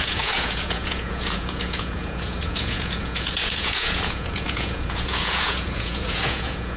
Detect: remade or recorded remade